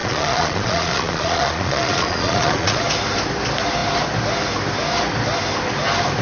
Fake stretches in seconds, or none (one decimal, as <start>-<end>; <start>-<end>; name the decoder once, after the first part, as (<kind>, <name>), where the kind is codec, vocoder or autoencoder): 0.0-2.8 (vocoder, Vocos)